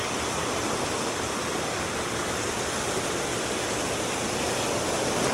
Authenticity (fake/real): real